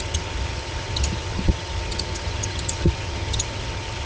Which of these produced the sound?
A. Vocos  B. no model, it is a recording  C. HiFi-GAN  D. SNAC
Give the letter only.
C